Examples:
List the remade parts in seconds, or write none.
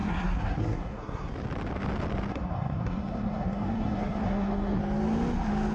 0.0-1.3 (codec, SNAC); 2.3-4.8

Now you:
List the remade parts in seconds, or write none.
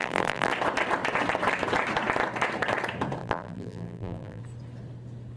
0.0-0.5 (vocoder, BigVGAN v2); 3.2-4.4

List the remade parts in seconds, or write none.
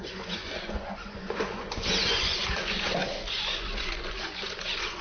0.0-5.0 (vocoder, Vocos)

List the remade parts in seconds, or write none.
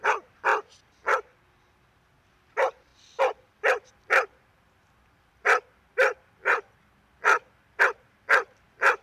none